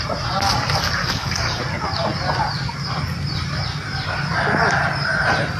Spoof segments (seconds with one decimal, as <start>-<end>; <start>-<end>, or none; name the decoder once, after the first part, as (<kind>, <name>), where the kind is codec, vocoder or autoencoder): 1.0-1.6 (codec, DAC)